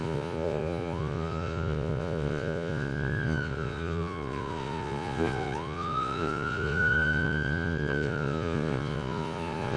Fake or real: fake